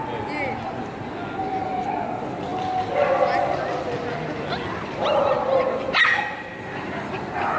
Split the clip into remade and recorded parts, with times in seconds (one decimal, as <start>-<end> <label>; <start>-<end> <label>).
0.0-7.6 recorded